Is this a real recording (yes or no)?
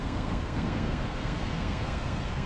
no